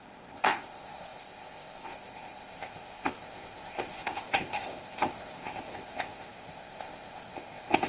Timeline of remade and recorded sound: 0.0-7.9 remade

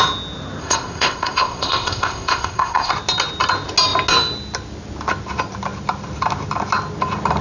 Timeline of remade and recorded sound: 0.0-0.6 recorded; 0.6-2.9 remade; 2.9-7.4 recorded